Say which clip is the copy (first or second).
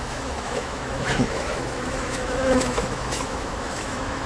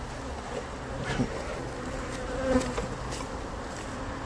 first